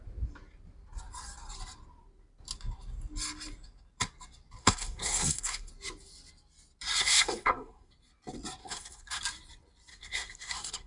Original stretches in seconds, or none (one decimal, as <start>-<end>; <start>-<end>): 0.0-4.6; 5.7-7.0; 7.9-8.6; 9.2-9.9